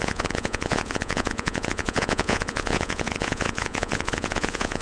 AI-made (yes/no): yes